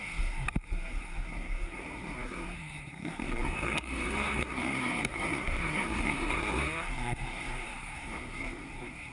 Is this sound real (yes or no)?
no